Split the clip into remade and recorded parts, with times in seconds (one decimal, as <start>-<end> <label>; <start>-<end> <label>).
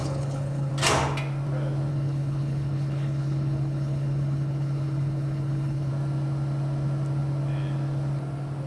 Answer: 0.0-0.7 remade; 0.7-1.9 recorded; 1.9-5.9 remade; 5.9-8.7 recorded